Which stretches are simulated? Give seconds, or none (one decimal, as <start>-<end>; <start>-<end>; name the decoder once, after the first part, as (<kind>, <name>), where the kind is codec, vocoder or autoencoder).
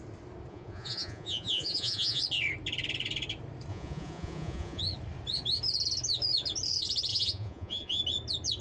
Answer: 0.5-2.2 (vocoder, Vocos); 3.7-4.8; 7.1-8.0